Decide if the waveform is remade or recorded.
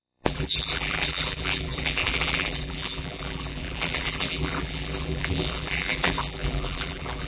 remade